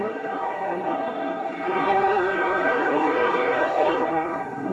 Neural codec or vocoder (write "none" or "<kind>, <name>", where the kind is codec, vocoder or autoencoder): codec, SNAC